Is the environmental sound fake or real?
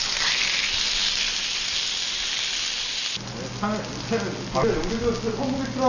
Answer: real